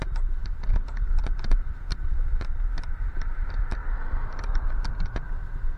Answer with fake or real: fake